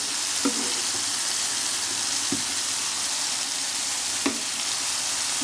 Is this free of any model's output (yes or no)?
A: yes